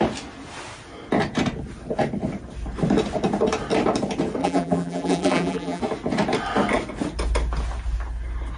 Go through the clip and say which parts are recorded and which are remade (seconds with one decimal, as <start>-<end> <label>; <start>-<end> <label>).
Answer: 0.0-4.4 recorded; 4.4-5.8 remade; 5.8-8.6 recorded